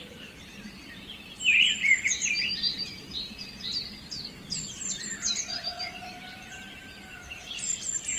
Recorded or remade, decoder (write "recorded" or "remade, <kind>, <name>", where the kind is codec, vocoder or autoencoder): remade, vocoder, BigVGAN v2